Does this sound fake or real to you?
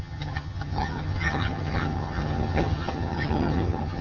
fake